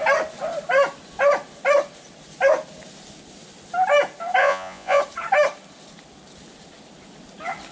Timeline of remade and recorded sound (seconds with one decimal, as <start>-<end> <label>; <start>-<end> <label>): 0.0-4.4 recorded; 4.4-5.0 remade; 5.0-7.7 recorded